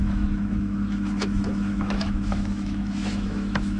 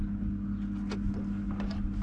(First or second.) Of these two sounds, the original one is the second